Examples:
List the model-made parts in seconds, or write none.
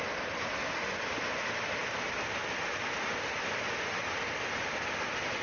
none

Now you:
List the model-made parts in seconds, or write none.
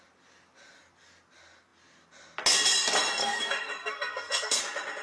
3.2-4.6 (codec, SNAC)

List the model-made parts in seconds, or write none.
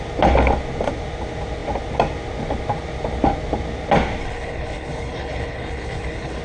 4.2-6.4 (codec, HILCodec)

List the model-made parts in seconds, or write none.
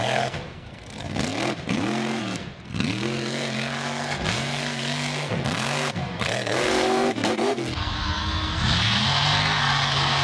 0.0-10.2 (codec, SNAC)